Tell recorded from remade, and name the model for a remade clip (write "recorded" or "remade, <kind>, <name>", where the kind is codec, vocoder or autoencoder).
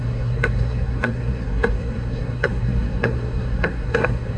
remade, codec, SNAC